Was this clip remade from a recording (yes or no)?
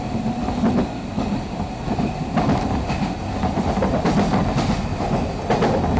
no